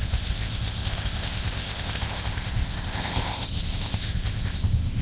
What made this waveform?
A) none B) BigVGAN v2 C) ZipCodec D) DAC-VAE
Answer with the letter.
C